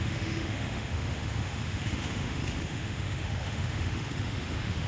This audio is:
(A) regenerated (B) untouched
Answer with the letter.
A